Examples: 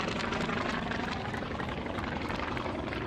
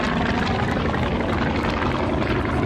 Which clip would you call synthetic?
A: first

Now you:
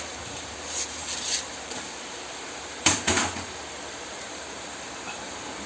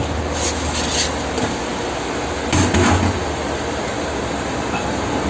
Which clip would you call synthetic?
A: first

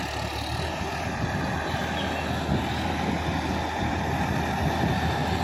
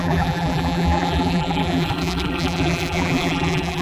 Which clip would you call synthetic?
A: second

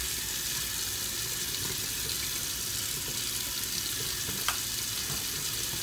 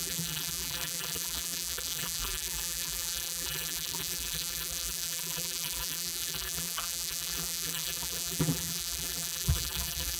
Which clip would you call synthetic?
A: second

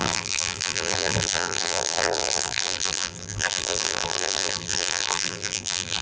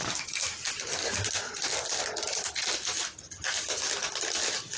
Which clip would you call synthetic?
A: first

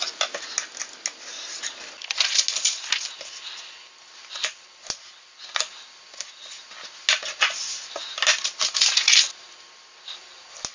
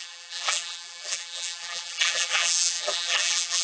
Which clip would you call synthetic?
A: second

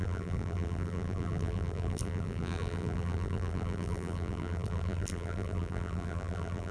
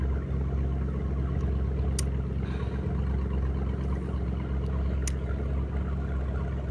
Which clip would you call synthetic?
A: first